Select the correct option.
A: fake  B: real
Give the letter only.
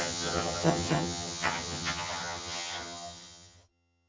A